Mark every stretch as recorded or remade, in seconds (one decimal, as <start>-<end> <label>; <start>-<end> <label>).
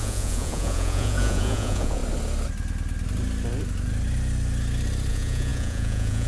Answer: 0.0-2.0 remade; 2.0-5.1 recorded; 5.1-6.3 remade